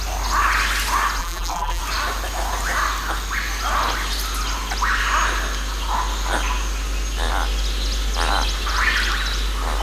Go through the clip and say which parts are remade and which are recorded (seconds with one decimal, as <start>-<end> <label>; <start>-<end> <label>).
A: 0.0-1.2 recorded; 1.2-1.8 remade; 1.8-9.8 recorded